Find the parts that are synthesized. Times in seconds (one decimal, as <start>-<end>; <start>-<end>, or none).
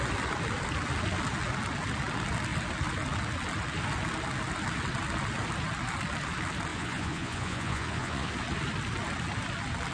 6.7-8.3